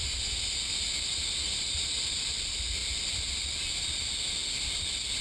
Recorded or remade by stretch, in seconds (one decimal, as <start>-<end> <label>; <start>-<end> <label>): 0.0-0.7 recorded; 0.7-2.3 remade; 2.3-5.2 recorded